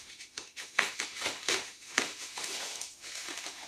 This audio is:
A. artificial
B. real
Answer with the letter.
A